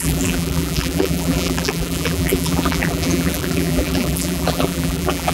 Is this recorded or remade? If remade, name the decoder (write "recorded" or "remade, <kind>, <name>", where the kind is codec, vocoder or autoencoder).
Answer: remade, vocoder, BigVGAN v2